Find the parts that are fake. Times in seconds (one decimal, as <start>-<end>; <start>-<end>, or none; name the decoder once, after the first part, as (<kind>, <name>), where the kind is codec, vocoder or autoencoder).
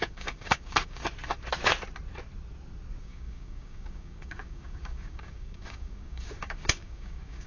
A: 0.0-1.0 (codec, DAC); 3.0-7.5